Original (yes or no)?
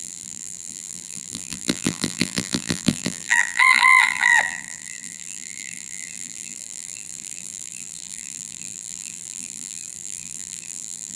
no